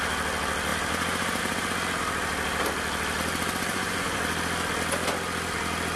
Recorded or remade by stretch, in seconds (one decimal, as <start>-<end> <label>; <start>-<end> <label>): 0.0-3.7 recorded; 3.7-4.2 remade; 4.2-6.0 recorded